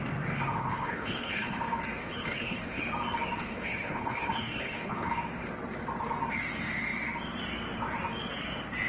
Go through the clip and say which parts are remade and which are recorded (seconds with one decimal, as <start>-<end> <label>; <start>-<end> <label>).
0.0-0.6 recorded; 0.6-1.6 remade; 1.6-2.0 recorded; 2.0-2.8 remade; 2.8-3.4 recorded; 3.4-5.1 remade; 5.1-8.9 recorded